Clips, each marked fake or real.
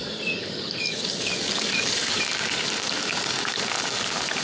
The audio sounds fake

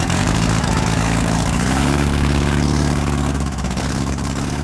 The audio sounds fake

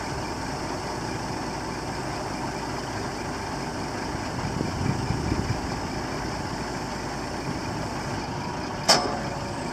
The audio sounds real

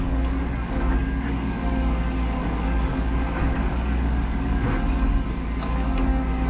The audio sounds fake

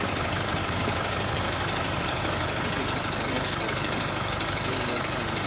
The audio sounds fake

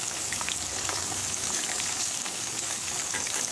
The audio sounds fake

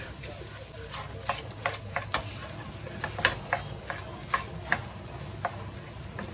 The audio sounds real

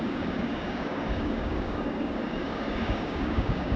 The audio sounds fake